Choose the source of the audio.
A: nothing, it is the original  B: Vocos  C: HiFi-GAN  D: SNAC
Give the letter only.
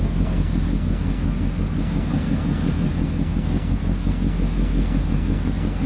D